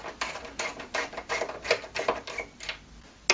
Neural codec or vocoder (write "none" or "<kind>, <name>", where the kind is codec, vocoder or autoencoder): none